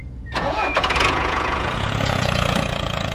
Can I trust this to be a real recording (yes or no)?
no